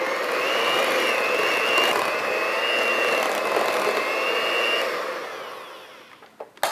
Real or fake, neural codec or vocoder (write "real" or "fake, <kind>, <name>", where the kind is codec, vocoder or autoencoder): real